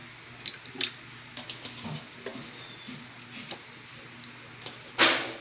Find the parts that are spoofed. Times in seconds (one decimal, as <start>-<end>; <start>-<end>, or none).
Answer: none